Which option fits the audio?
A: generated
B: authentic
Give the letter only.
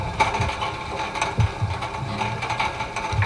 B